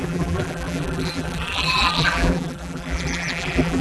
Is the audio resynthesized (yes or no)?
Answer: yes